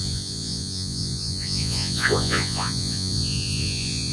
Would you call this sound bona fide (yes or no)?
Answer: no